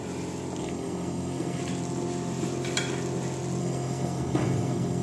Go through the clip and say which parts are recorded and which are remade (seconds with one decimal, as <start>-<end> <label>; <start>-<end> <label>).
0.0-0.6 recorded; 0.6-1.6 remade; 1.6-3.6 recorded; 3.6-5.0 remade

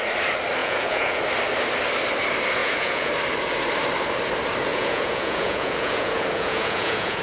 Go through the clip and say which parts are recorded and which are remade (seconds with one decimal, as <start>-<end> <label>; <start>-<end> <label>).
0.0-0.6 recorded; 0.6-1.2 remade; 1.2-2.6 recorded; 2.6-3.1 remade; 3.1-4.7 recorded; 4.7-7.2 remade

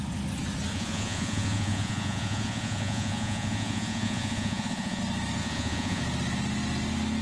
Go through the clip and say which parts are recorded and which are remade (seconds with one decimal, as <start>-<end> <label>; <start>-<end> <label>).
0.0-0.7 recorded; 0.7-5.0 remade; 5.0-5.4 recorded; 5.4-6.0 remade; 6.0-7.2 recorded